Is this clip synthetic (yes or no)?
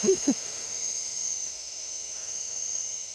yes